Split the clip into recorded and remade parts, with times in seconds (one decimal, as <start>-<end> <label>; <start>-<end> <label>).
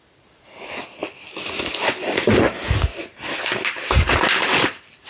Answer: 0.0-5.1 recorded